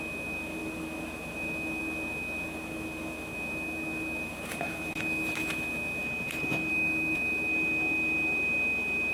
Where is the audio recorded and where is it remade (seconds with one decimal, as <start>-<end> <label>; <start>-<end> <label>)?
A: 0.0-6.0 remade; 6.0-6.7 recorded; 6.7-7.5 remade; 7.5-9.1 recorded